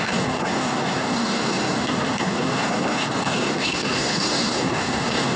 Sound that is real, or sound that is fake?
fake